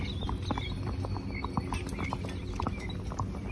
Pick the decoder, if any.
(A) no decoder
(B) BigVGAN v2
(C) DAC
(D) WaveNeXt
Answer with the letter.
A